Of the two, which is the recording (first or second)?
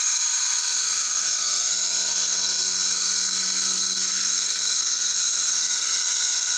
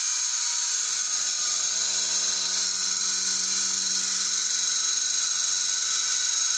second